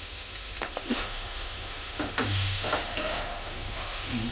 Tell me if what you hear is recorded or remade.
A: remade